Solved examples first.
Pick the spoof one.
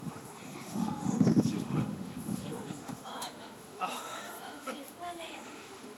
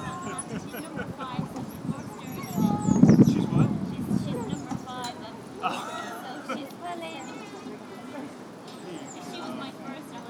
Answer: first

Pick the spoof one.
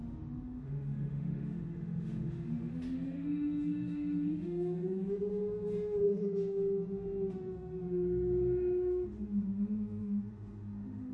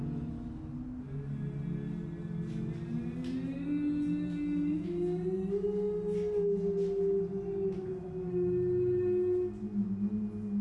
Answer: first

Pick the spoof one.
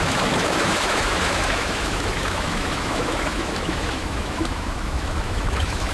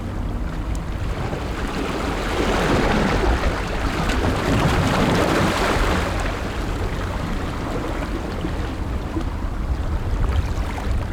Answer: first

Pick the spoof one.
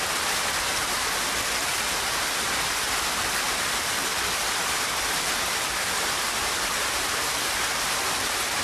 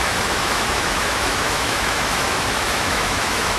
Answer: second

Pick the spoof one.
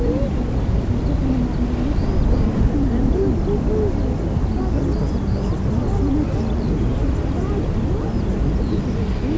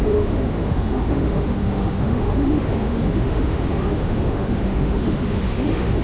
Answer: second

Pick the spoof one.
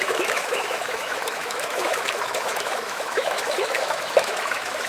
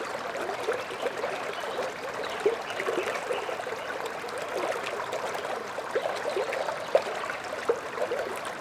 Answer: first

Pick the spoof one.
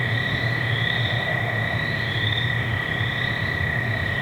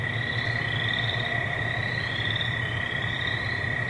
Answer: first